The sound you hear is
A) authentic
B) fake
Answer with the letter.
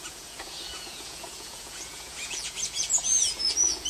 B